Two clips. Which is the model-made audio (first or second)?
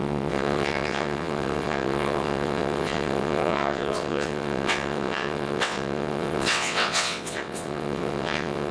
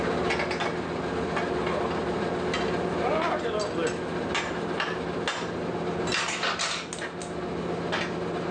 first